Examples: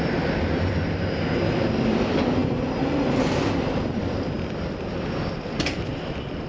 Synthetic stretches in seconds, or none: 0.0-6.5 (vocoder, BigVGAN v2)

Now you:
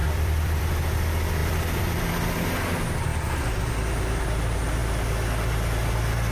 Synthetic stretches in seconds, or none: 0.0-0.6 (vocoder, BigVGAN v2); 1.4-2.0